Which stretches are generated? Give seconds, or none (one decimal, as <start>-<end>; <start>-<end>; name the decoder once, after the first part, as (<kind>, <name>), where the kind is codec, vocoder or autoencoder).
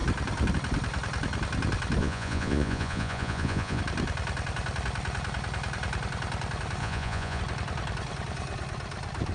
2.0-3.8 (vocoder, Vocos); 6.8-7.4